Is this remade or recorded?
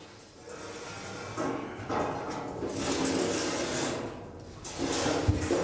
recorded